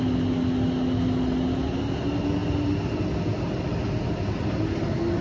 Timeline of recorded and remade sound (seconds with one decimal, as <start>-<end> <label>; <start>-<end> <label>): 0.0-5.2 recorded